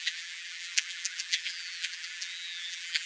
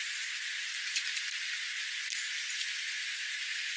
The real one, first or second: second